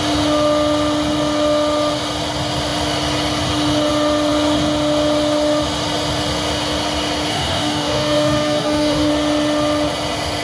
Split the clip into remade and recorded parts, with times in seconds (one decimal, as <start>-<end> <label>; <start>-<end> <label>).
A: 0.0-7.3 recorded; 7.3-9.1 remade; 9.1-10.4 recorded